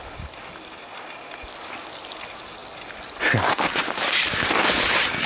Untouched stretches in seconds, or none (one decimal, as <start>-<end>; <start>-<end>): 0.0-5.3